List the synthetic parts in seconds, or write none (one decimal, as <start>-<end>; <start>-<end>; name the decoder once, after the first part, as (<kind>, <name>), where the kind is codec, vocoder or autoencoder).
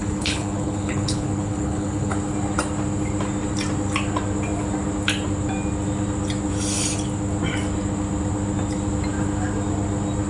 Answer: 0.0-2.1 (codec, HILCodec)